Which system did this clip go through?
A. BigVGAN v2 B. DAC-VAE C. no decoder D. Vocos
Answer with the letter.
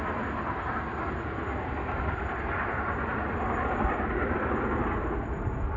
C